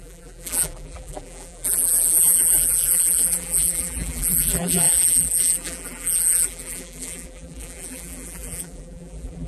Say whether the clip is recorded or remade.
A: remade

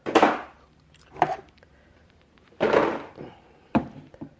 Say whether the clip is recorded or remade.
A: remade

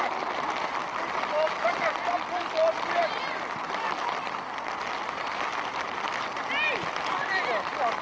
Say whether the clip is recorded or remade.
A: recorded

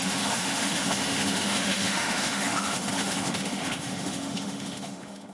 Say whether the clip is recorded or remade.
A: remade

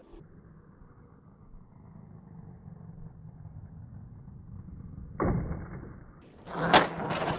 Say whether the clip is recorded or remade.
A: recorded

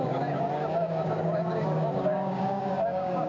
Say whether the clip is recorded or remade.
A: remade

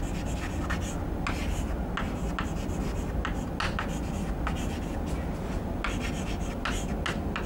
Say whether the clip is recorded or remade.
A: recorded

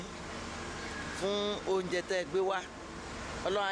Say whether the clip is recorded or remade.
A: recorded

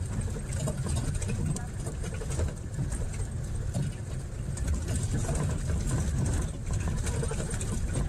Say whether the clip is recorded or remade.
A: recorded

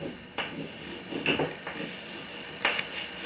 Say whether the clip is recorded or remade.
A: recorded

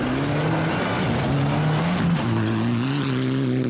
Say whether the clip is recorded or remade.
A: recorded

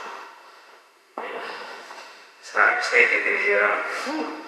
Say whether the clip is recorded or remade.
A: remade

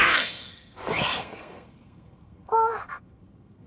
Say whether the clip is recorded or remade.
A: remade